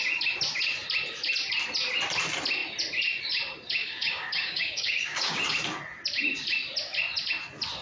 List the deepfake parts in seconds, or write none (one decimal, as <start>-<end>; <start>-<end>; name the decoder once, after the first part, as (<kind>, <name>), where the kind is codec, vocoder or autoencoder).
3.8-5.4 (codec, DAC)